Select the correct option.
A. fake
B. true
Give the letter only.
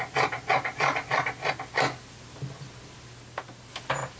B